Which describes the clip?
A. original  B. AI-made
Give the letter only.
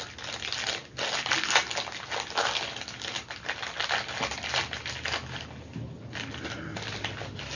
A